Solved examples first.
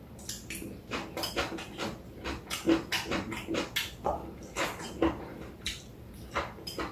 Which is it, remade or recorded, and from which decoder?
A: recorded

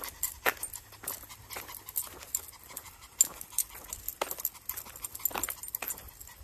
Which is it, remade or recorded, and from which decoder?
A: recorded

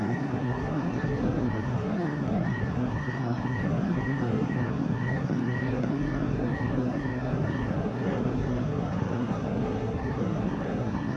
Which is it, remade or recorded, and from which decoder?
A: remade, codec, SNAC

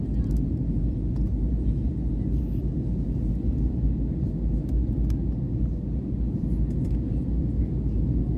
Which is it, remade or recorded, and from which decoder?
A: recorded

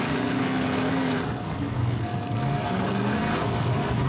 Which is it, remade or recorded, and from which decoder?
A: remade, codec, SNAC